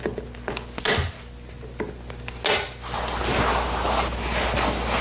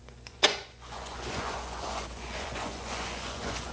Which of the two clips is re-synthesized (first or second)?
second